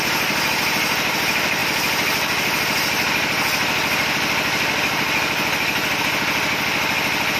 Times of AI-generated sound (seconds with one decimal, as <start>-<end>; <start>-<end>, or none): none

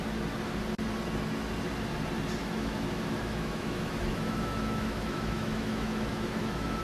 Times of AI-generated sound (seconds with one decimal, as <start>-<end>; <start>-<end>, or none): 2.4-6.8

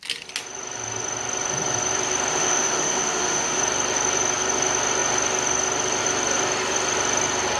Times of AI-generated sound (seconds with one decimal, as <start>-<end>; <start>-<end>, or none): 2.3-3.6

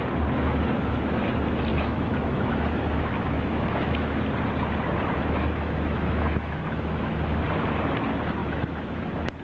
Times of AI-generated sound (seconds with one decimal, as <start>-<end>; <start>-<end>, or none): 1.7-4.2; 5.2-7.4; 8.4-9.4

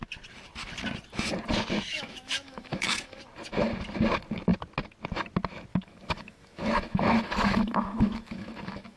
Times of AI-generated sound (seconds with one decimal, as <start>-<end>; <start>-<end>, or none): 1.9-3.1; 5.7-9.0

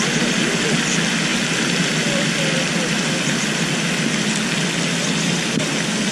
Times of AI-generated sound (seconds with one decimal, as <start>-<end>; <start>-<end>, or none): none